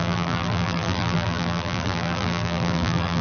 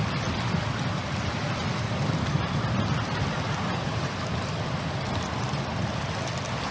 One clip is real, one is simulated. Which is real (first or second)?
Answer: second